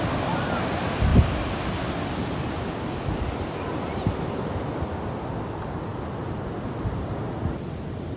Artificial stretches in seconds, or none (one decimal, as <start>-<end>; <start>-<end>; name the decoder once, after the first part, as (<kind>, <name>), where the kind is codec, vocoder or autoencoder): none